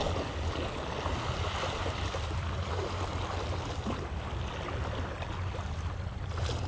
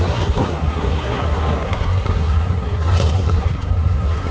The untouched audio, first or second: first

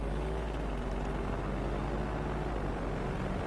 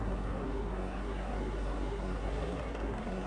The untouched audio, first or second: first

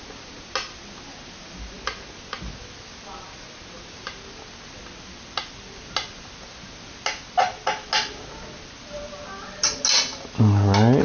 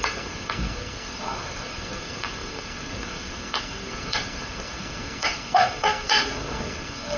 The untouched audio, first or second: first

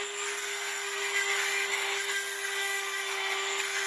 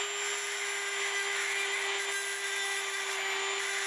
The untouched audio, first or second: second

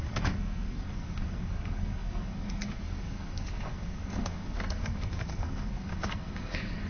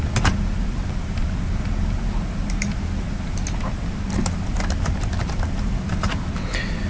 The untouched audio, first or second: second